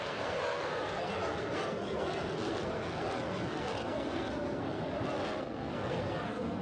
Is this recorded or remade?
remade